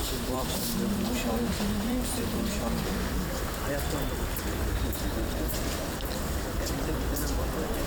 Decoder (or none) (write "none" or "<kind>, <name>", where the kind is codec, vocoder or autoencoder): vocoder, BigVGAN v2